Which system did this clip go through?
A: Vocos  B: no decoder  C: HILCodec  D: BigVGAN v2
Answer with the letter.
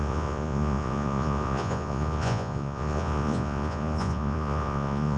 A